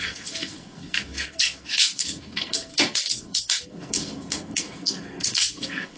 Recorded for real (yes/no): no